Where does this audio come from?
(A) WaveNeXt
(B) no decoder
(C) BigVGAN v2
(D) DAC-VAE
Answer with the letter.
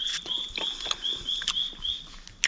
B